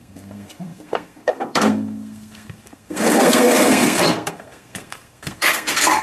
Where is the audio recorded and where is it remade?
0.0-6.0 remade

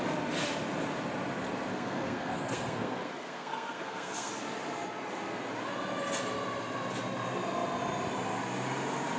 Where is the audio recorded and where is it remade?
0.0-1.7 recorded; 1.7-4.3 remade; 4.3-9.2 recorded

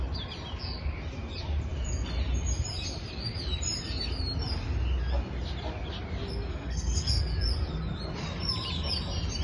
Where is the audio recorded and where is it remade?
0.0-6.5 recorded; 6.5-7.2 remade; 7.2-9.4 recorded

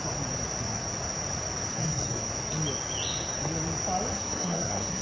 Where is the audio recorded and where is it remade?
0.0-1.7 recorded; 1.7-2.3 remade; 2.3-4.1 recorded; 4.1-5.0 remade

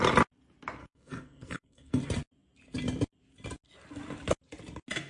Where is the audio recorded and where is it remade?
0.0-0.8 recorded; 0.8-2.0 remade; 2.0-5.1 recorded